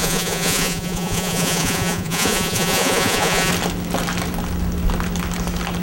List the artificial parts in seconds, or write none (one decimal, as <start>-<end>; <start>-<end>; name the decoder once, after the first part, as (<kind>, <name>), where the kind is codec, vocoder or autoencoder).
0.0-3.5 (vocoder, Vocos)